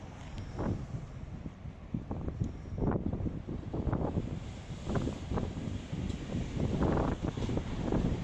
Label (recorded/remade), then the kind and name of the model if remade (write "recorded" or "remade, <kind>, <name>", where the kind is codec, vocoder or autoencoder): recorded